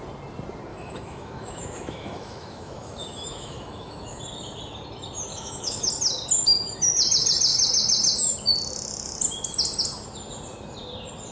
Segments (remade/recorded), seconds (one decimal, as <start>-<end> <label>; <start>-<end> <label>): 0.0-0.7 recorded; 0.7-4.2 remade; 4.2-5.3 recorded; 5.3-5.9 remade; 5.9-11.3 recorded